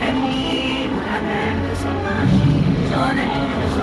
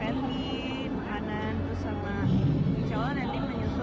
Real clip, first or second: second